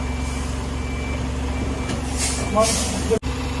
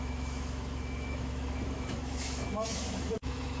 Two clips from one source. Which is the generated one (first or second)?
second